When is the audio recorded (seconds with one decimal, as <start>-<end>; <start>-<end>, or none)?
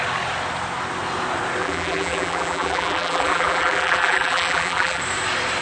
0.0-1.6; 5.0-5.6